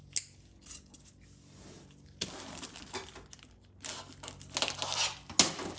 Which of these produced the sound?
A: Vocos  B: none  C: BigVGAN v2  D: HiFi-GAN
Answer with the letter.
B